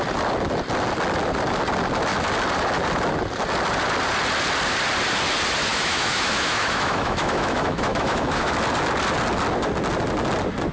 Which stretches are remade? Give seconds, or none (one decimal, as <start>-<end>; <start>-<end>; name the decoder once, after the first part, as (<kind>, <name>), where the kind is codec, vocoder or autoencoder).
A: 5.7-8.5 (autoencoder, DAC-VAE)